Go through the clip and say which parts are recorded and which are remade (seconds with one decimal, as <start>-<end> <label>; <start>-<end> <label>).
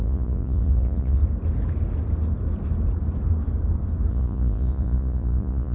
0.0-1.2 remade; 1.2-4.1 recorded; 4.1-5.7 remade